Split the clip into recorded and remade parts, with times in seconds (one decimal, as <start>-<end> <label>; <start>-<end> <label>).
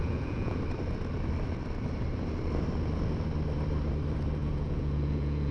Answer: 0.0-0.6 remade; 0.6-4.4 recorded; 4.4-5.5 remade